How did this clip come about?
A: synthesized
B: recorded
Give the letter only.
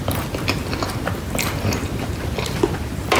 B